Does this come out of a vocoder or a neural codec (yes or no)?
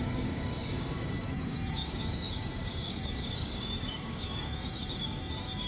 yes